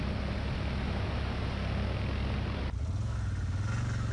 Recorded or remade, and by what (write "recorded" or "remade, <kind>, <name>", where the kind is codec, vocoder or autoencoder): recorded